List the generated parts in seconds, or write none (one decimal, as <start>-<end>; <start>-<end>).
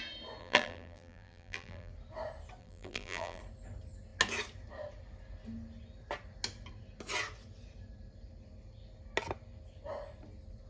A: 0.4-1.9; 2.6-3.4